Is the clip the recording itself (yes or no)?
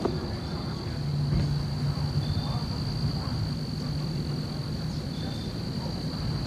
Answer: yes